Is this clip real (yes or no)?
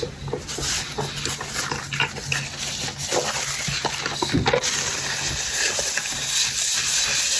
yes